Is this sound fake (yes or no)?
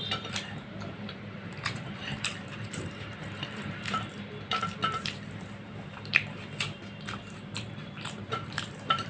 yes